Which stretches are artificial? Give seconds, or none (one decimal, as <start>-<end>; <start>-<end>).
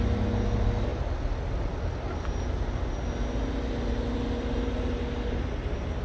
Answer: none